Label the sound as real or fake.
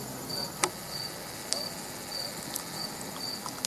real